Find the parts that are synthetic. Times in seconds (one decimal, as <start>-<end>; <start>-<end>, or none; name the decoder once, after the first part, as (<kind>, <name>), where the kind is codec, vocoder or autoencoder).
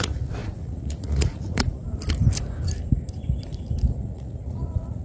0.0-1.8 (vocoder, Vocos); 3.9-5.0